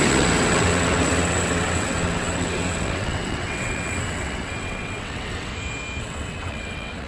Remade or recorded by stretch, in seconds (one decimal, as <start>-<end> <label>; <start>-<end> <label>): 0.0-5.5 remade; 5.5-6.0 recorded; 6.0-7.1 remade